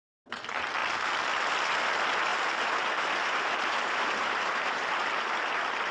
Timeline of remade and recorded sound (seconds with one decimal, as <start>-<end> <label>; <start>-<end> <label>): 0.0-2.3 recorded; 2.3-5.9 remade